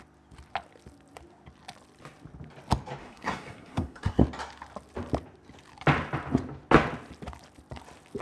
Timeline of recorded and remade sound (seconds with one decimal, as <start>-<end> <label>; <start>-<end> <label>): 0.0-3.0 recorded; 3.0-4.2 remade; 4.2-8.2 recorded